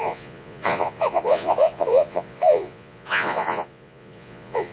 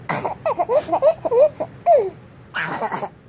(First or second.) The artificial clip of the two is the first